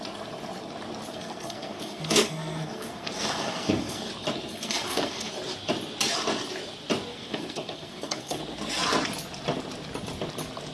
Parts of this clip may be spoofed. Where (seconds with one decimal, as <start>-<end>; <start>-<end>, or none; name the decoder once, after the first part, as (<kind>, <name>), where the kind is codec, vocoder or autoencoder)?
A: 1.1-4.1 (codec, SNAC); 4.5-5.3; 7.1-8.4